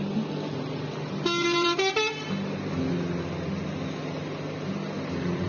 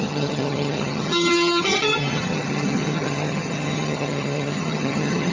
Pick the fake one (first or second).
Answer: second